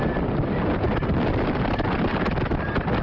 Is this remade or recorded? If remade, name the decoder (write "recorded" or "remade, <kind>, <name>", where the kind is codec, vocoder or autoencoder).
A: recorded